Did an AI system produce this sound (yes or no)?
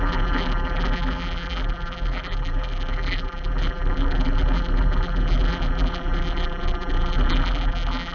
yes